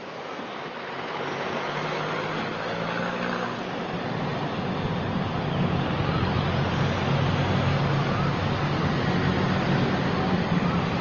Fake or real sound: real